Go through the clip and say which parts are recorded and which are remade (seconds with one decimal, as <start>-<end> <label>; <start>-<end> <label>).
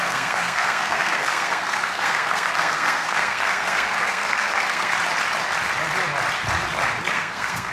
0.0-4.9 remade; 4.9-7.1 recorded; 7.1-7.7 remade